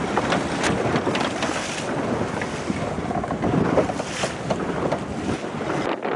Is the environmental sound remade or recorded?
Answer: recorded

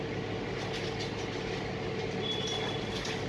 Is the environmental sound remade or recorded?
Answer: recorded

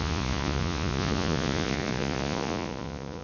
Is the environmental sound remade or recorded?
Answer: remade